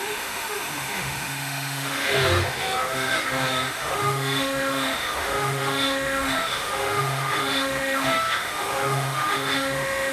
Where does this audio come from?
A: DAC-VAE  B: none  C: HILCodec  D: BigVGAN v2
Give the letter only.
A